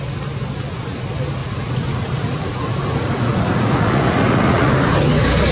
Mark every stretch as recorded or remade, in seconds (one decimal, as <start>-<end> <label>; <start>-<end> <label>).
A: 0.0-1.4 recorded; 1.4-4.7 remade; 4.7-5.5 recorded